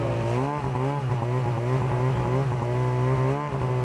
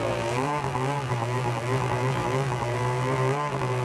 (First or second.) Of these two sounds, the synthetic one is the second